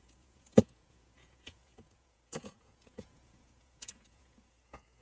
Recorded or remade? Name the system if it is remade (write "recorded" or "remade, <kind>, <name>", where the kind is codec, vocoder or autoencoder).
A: remade, vocoder, Vocos